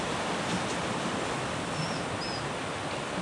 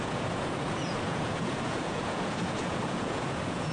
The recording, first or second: first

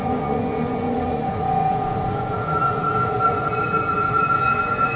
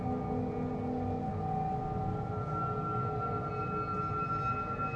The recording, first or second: second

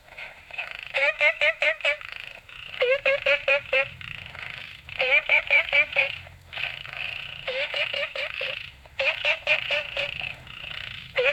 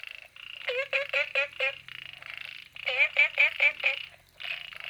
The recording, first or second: second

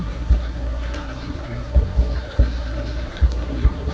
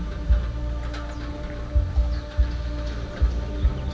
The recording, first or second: second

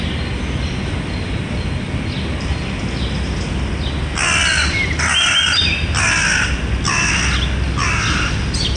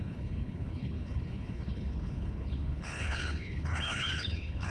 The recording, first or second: first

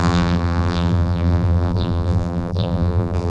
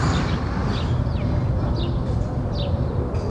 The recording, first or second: second